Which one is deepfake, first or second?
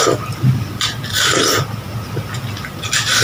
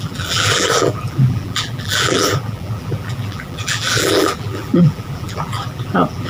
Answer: second